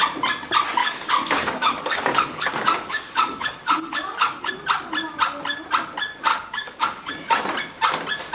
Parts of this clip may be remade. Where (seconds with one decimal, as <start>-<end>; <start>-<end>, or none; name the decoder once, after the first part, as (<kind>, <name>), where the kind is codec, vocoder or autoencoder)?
0.8-4.5 (codec, DAC); 6.3-7.1